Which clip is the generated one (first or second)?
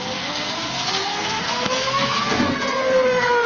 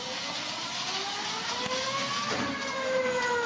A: first